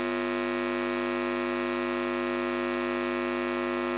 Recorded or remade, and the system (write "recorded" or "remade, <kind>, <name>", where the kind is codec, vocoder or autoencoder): recorded